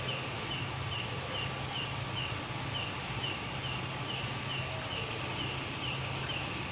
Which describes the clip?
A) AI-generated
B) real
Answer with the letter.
B